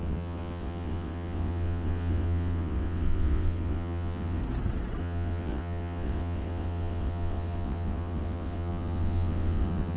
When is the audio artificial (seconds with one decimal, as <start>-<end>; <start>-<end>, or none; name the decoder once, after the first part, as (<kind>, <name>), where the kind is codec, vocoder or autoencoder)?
0.0-4.4 (vocoder, WaveNeXt); 5.0-10.0